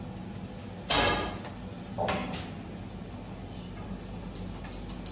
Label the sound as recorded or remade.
recorded